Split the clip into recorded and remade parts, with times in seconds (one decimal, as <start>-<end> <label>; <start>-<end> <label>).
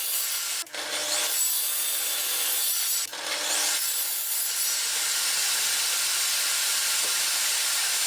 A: 0.0-8.1 recorded